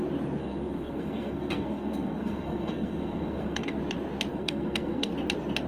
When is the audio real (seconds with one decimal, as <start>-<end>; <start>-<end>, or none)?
0.0-0.4; 3.8-4.3; 5.1-5.7